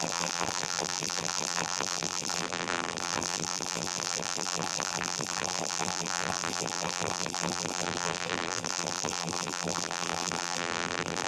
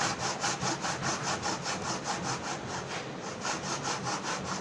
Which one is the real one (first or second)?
second